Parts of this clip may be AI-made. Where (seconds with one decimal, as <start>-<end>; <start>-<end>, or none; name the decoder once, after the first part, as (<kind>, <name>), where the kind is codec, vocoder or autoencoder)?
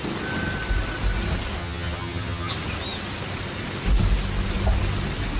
1.6-2.5 (vocoder, HiFi-GAN)